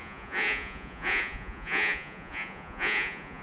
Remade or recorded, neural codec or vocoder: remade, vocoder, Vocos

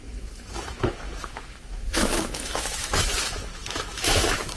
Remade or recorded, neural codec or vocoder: remade, autoencoder, DAC-VAE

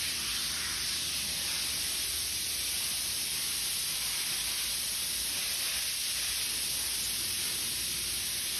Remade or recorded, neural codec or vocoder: recorded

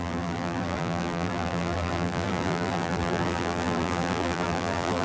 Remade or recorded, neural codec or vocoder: remade, vocoder, BigVGAN v2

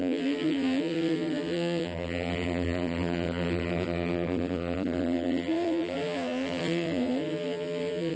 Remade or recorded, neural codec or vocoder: remade, vocoder, BigVGAN v2